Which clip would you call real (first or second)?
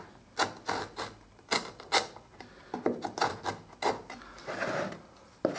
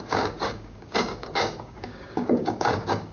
first